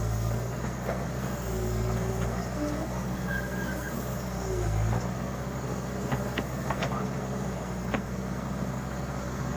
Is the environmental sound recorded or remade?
remade